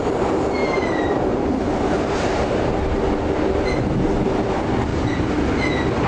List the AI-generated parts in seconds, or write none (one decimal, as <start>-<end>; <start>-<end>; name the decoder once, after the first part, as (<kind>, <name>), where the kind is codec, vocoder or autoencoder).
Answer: 0.6-2.8 (vocoder, BigVGAN v2); 4.9-5.5